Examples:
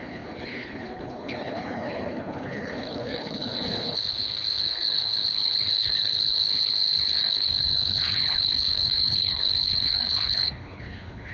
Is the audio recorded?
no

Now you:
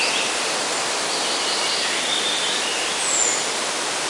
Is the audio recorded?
yes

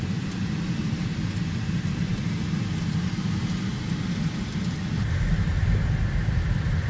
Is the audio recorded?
yes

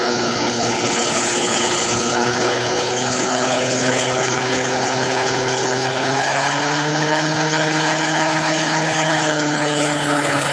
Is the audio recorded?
no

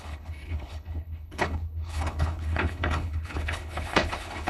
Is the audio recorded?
no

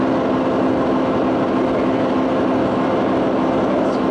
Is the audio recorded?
yes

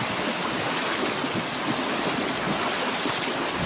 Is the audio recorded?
yes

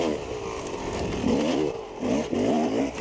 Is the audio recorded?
yes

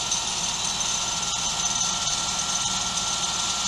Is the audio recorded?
yes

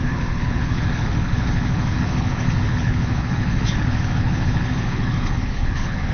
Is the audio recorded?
no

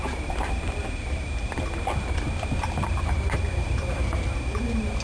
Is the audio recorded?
yes